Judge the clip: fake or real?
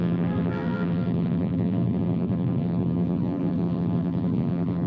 fake